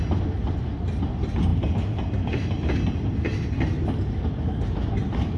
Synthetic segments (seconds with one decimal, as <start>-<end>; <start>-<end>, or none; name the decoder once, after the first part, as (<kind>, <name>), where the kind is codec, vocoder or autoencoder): none